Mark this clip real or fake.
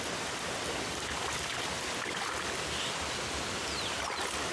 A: real